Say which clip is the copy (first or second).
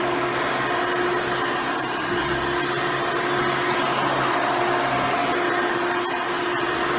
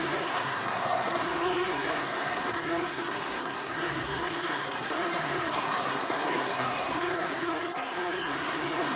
second